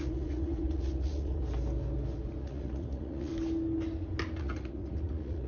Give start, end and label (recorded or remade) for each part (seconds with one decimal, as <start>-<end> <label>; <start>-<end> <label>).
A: 0.0-1.4 remade; 1.4-2.4 recorded; 2.4-3.3 remade; 3.3-4.4 recorded; 4.4-5.5 remade